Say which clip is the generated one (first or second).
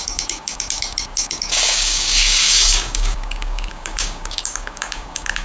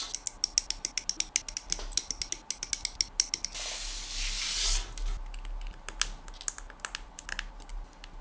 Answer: first